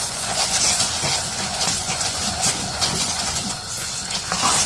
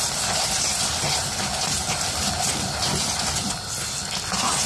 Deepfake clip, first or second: first